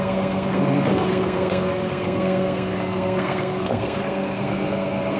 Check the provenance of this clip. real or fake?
fake